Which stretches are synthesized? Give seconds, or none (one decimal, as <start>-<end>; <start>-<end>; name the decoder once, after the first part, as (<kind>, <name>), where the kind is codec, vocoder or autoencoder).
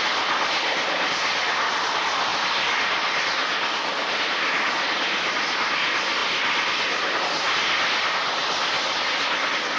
none